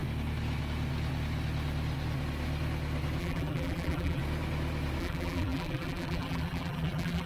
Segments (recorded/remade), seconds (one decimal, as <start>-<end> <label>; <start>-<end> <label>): 0.0-3.2 recorded; 3.2-4.2 remade; 4.2-5.0 recorded; 5.0-7.3 remade